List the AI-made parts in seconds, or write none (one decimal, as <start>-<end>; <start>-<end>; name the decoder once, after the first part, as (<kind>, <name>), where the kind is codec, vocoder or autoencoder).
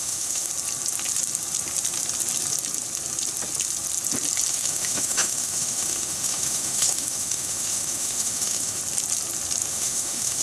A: 0.0-0.5 (autoencoder, DAC-VAE); 4.5-8.8; 9.7-10.4